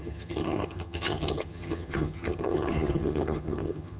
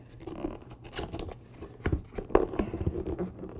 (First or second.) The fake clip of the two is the first